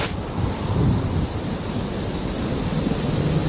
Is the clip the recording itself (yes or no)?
yes